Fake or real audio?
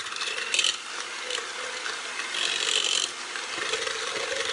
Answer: real